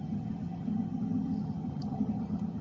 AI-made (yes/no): yes